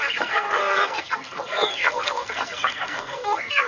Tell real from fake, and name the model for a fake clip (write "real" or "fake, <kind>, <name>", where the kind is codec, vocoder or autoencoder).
fake, codec, SNAC